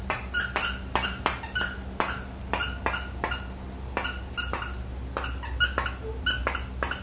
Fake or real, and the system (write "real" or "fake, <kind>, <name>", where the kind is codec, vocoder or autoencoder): real